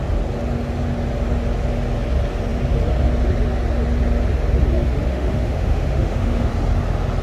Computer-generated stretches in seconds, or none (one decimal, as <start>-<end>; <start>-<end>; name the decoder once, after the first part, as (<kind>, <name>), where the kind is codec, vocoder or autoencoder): 5.1-6.5 (autoencoder, DAC-VAE)